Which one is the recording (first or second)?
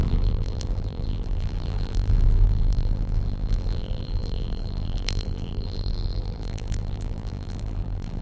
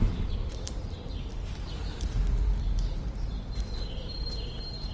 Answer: second